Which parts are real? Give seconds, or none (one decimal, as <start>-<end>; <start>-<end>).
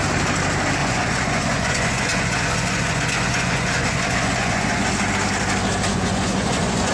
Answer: 0.0-0.8; 4.9-5.9